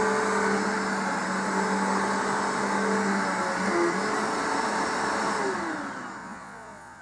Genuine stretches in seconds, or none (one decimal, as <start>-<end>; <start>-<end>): 0.0-6.2